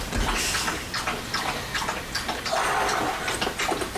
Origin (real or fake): real